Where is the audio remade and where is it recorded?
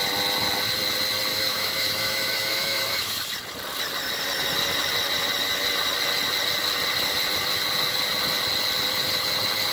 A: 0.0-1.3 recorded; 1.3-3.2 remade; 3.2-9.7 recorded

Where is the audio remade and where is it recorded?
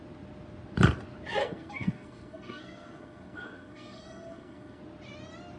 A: 0.0-1.4 recorded; 1.4-4.8 remade; 4.8-5.6 recorded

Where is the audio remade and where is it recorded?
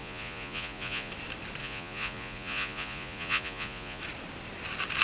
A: 0.0-1.1 remade; 1.1-1.6 recorded; 1.6-4.0 remade; 4.0-5.0 recorded